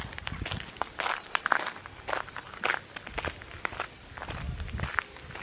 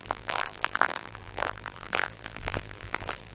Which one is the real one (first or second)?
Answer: first